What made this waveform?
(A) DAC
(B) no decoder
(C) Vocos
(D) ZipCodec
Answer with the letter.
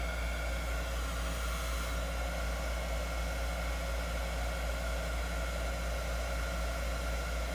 B